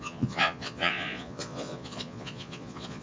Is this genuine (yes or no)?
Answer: no